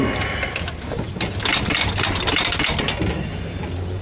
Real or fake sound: real